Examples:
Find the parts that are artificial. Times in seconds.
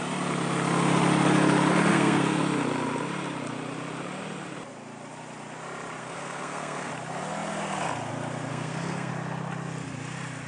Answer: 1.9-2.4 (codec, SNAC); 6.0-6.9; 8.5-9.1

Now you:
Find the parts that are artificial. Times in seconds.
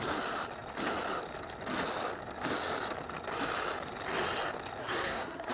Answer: 4.8-5.5 (codec, SNAC)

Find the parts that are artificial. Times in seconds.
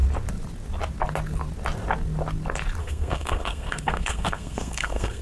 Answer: 2.8-5.2 (codec, SNAC)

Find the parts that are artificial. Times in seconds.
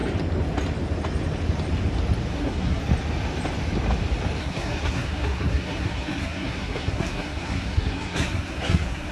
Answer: 2.3-2.8 (codec, SNAC); 4.4-9.1